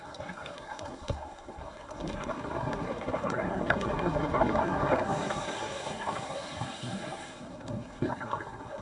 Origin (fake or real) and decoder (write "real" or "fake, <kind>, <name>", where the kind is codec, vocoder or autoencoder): fake, codec, SNAC